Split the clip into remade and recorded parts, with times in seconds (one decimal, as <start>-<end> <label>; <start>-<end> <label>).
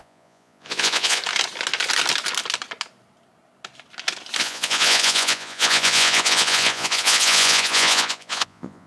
0.0-1.2 remade; 1.2-4.4 recorded; 4.4-8.9 remade